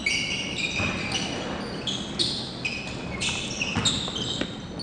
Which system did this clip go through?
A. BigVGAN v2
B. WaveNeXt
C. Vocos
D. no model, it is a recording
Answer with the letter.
D